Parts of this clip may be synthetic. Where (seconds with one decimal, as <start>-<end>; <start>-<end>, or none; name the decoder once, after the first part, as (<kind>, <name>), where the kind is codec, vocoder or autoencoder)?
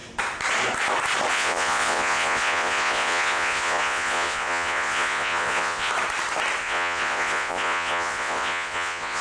1.3-5.9 (vocoder, Vocos); 6.6-9.2